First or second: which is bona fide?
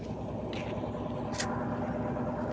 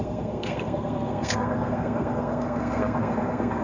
first